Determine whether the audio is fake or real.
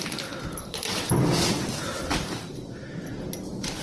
real